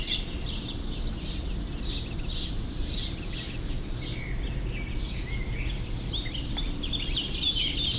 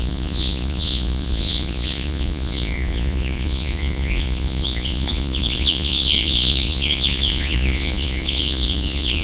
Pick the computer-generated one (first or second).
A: second